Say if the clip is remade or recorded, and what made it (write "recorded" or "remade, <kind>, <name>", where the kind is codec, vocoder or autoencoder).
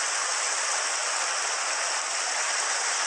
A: recorded